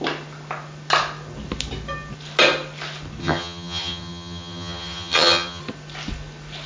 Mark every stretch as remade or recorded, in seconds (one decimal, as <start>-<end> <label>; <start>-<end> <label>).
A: 0.0-3.2 recorded; 3.2-5.6 remade; 5.6-6.7 recorded